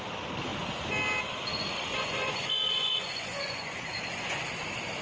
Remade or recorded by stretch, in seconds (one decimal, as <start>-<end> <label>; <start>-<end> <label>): 0.0-1.5 recorded; 1.5-4.5 remade; 4.5-5.0 recorded